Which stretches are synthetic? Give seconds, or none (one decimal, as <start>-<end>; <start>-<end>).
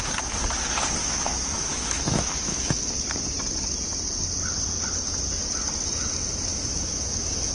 1.0-2.8; 6.5-7.5